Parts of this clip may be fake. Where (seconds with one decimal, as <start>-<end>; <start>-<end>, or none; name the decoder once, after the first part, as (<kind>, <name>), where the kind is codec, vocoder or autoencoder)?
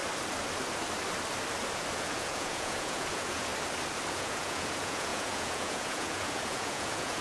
1.9-3.5 (vocoder, Vocos); 4.1-7.2